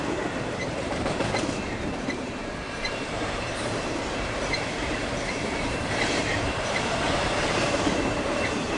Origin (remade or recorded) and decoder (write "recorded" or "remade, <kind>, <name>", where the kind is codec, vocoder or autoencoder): remade, vocoder, BigVGAN v2